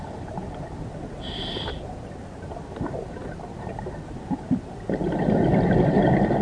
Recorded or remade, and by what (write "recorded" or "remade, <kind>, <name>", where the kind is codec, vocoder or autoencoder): recorded